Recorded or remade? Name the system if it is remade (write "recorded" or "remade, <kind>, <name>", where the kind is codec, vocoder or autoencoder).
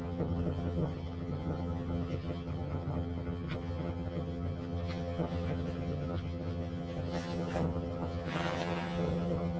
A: remade, vocoder, HiFi-GAN